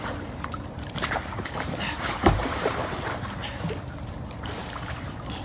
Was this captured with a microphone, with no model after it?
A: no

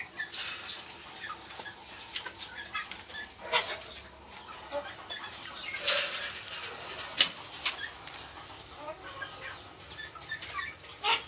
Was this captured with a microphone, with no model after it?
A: yes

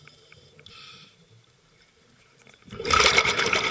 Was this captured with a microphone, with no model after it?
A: no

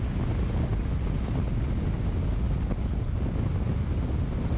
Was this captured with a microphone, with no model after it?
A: yes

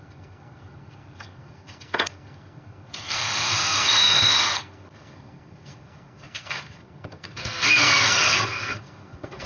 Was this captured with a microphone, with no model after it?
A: no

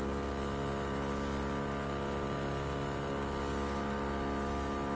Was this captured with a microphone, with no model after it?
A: yes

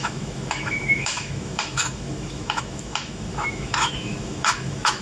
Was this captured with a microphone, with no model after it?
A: no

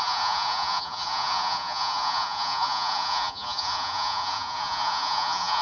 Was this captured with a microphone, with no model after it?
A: no